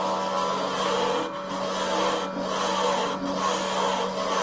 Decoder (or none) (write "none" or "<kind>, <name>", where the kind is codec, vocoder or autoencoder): none